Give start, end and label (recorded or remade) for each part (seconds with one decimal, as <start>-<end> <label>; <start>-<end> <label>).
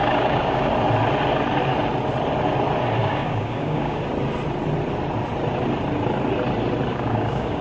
0.0-0.7 remade; 0.7-3.0 recorded; 3.0-4.0 remade; 4.0-6.9 recorded; 6.9-7.6 remade